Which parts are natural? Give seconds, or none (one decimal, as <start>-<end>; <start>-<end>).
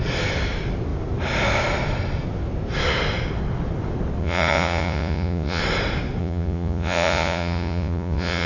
0.0-4.2; 5.6-6.2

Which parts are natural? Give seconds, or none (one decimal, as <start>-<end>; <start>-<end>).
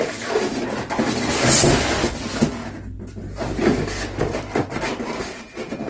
0.0-5.9